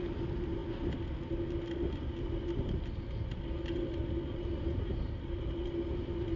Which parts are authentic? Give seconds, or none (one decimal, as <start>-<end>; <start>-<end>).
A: 0.0-6.4